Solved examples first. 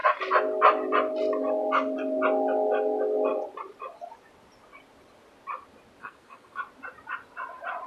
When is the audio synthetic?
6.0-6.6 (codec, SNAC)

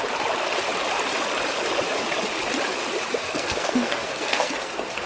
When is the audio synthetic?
3.2-5.1 (codec, SNAC)